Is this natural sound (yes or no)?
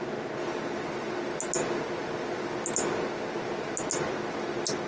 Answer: yes